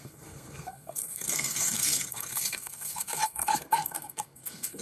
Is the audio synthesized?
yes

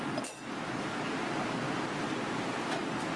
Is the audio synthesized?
no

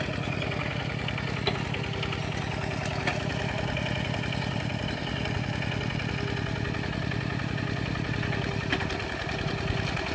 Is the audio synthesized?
no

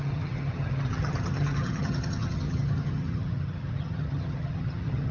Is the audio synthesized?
yes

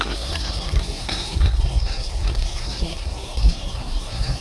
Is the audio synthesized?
yes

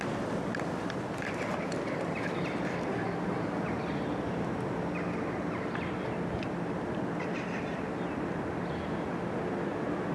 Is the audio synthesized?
no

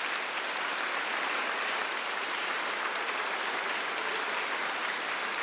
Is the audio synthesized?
no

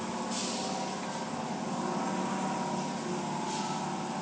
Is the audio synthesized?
no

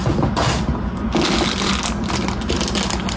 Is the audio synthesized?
no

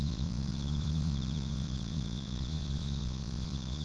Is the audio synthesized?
yes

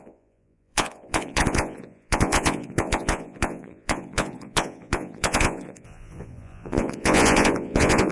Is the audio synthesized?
yes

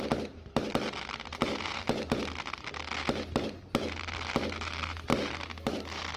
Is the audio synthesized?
no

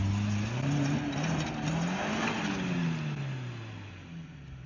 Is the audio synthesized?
no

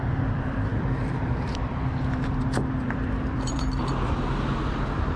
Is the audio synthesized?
yes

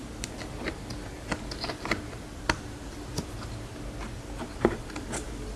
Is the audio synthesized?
no